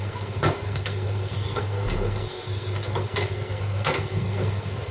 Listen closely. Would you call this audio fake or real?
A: fake